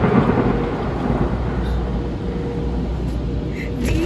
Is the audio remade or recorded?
recorded